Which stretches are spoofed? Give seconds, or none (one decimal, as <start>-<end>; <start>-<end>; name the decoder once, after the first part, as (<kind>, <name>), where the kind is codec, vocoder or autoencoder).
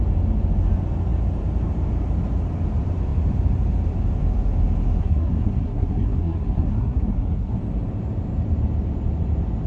5.0-7.6 (codec, SNAC)